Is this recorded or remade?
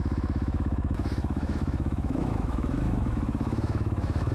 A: remade